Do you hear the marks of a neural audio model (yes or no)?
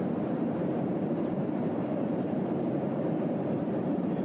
yes